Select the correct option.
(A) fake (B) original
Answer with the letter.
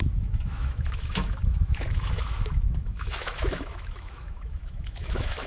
A